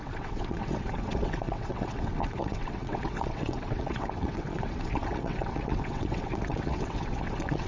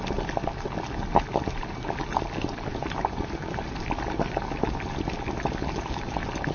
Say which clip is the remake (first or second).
first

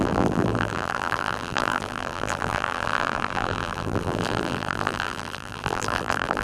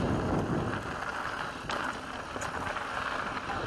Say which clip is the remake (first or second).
first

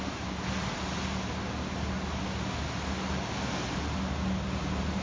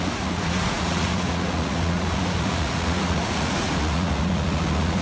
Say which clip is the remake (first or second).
second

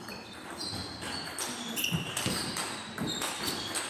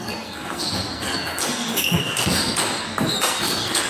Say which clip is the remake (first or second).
second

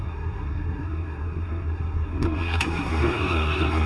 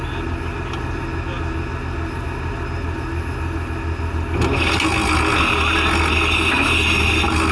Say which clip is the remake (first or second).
first